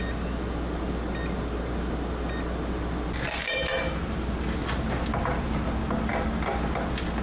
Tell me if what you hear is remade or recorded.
recorded